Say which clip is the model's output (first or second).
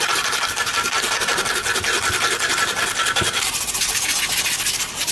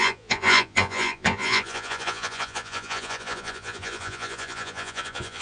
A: second